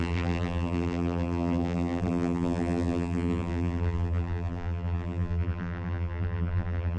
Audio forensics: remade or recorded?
remade